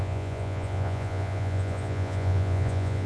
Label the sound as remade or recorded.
remade